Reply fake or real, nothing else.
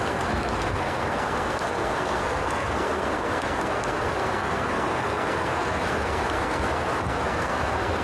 fake